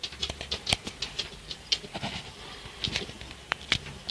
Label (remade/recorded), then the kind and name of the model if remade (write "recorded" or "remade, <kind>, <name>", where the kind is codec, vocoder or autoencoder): recorded